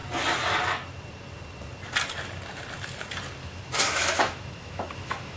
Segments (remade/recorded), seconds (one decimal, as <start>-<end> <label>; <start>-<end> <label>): 0.0-3.4 recorded; 3.4-5.4 remade